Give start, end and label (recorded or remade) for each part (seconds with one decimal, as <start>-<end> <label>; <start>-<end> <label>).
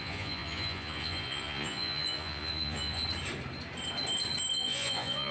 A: 0.0-3.0 remade; 3.0-4.5 recorded; 4.5-5.3 remade